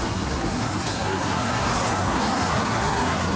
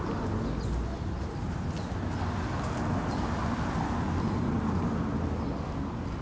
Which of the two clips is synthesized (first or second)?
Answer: first